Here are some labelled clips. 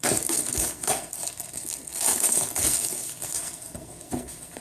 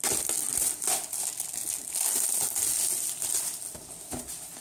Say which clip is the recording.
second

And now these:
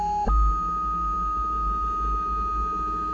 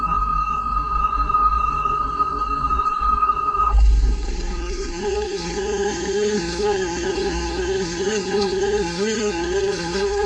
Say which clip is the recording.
first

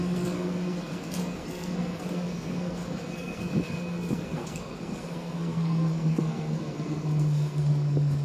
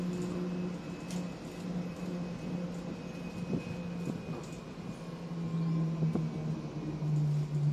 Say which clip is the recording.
second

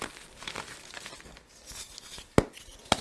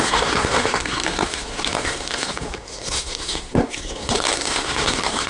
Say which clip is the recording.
first